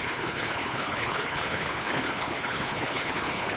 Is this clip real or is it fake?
fake